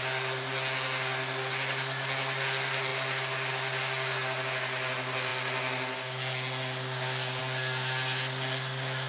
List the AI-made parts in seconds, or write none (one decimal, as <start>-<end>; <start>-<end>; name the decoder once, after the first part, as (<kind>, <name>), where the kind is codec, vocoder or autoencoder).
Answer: none